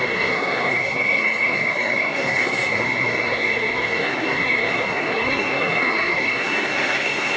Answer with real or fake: fake